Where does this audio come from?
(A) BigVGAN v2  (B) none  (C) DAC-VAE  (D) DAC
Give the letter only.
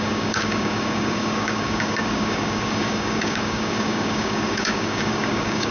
D